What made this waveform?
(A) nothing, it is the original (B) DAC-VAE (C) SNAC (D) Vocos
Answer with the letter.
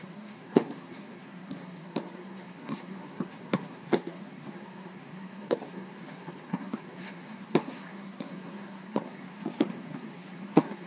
C